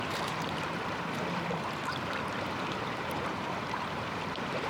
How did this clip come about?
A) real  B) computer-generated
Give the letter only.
B